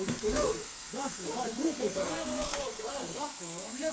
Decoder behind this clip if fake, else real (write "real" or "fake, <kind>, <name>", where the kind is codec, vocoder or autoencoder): fake, codec, SNAC